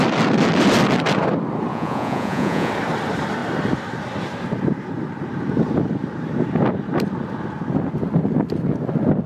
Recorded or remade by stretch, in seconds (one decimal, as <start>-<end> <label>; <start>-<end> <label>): 0.0-1.7 recorded; 1.7-2.7 remade; 2.7-9.3 recorded